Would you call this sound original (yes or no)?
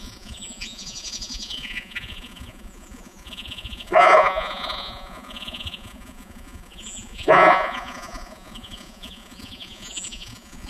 no